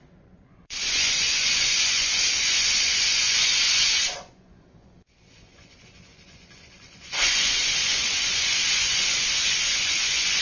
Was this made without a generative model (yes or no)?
no